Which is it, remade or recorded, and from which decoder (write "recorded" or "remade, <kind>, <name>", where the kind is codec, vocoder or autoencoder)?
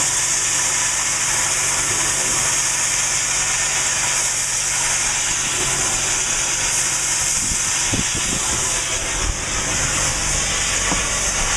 recorded